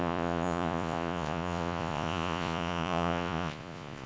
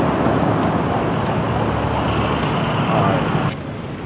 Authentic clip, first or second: second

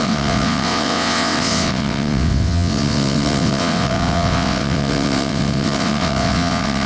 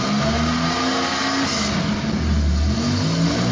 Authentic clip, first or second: second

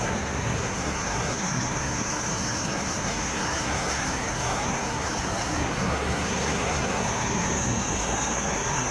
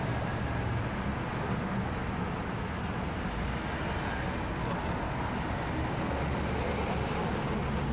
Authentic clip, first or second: second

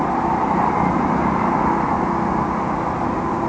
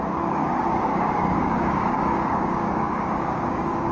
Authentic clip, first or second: first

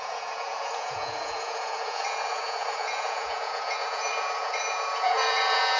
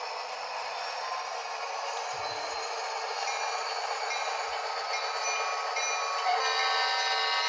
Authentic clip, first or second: second